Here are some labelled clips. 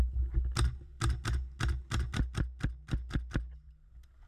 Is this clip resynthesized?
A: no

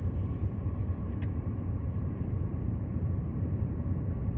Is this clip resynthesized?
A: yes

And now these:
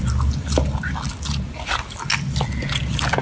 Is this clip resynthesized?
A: no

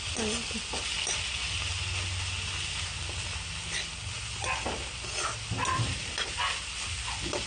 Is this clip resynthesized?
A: no